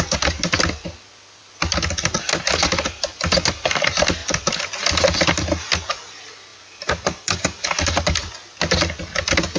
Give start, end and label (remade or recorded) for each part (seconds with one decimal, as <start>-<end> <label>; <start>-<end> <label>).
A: 0.0-6.5 recorded; 6.5-8.3 remade; 8.3-9.6 recorded